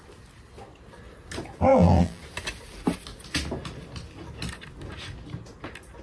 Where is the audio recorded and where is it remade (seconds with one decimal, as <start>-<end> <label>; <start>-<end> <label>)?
0.0-1.7 recorded; 1.7-2.2 remade; 2.2-6.0 recorded